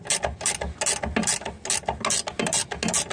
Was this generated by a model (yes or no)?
no